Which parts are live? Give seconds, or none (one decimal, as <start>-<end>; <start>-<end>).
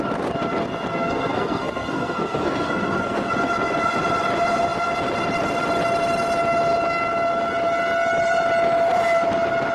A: 0.0-0.9; 3.3-9.7